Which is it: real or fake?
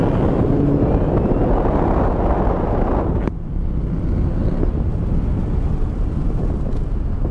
real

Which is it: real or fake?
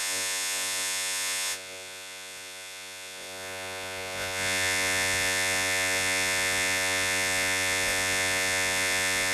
fake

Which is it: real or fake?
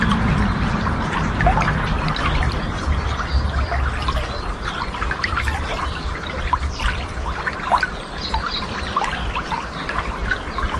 fake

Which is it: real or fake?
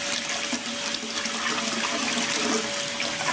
real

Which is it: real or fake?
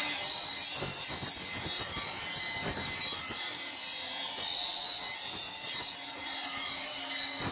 real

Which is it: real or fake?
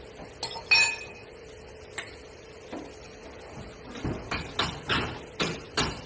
real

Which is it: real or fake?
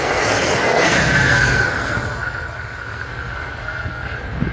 fake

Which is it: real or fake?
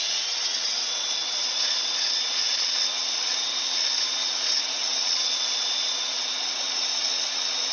fake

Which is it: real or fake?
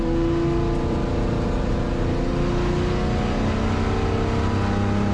real